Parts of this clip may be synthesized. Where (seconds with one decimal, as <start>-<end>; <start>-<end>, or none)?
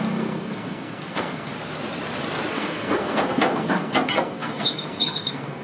0.0-1.5; 2.5-5.6